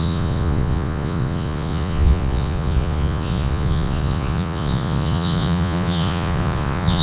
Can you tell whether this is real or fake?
fake